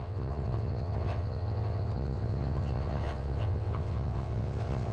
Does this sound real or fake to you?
fake